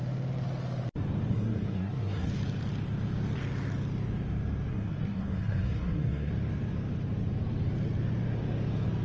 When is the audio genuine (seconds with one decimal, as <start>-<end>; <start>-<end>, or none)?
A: 0.0-1.3; 2.3-4.7; 6.3-9.0